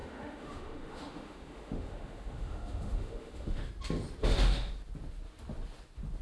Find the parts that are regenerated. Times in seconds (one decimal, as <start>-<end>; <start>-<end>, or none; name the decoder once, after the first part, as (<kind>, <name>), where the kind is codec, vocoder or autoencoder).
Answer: 0.0-3.7 (autoencoder, DAC-VAE); 4.2-4.7